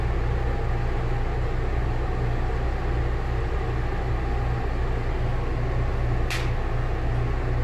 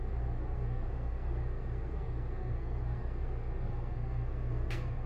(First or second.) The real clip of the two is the first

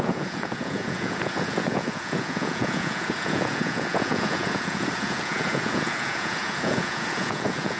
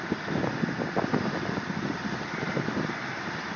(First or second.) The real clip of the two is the second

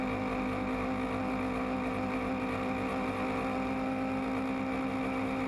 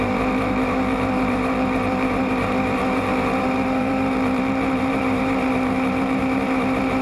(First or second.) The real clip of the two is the first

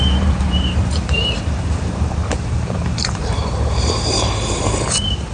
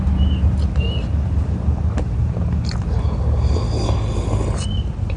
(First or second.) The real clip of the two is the second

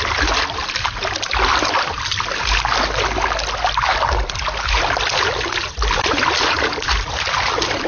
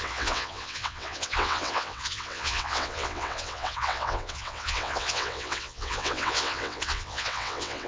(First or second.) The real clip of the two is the first